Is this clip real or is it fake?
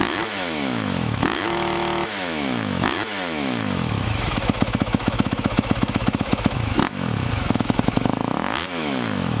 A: fake